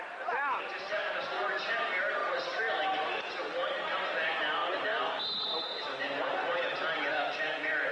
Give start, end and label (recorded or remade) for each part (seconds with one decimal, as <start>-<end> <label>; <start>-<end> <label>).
0.0-7.9 recorded